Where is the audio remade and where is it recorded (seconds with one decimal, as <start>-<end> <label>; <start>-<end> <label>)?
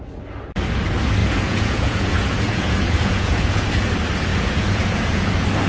0.0-1.2 recorded; 1.2-3.7 remade; 3.7-4.3 recorded; 4.3-5.3 remade; 5.3-5.7 recorded